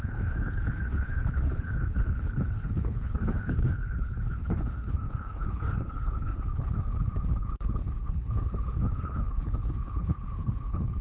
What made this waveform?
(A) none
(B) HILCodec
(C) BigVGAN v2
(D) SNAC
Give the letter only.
B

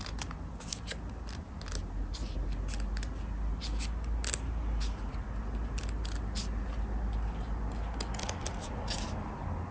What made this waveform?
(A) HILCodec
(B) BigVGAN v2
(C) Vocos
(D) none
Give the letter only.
D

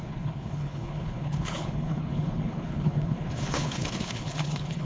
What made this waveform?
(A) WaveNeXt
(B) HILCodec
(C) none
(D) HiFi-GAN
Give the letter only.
B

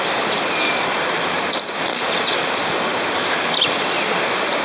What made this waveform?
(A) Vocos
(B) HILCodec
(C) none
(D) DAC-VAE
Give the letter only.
C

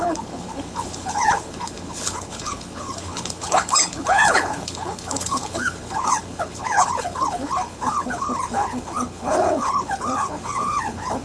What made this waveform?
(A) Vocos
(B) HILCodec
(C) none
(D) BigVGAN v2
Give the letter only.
B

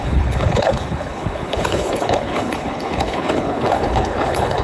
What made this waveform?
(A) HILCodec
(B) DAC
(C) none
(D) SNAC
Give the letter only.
A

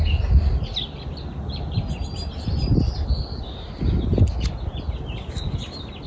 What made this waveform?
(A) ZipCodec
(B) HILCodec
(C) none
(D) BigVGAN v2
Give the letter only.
C